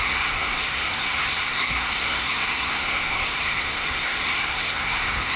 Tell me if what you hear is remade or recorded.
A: remade